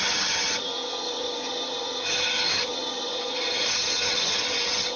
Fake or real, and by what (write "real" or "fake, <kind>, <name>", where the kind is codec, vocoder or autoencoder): fake, vocoder, HiFi-GAN